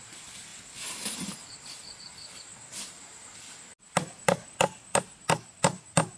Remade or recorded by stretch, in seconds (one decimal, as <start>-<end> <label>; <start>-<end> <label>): 0.0-0.5 remade; 0.5-2.0 recorded; 2.0-2.5 remade; 2.5-6.2 recorded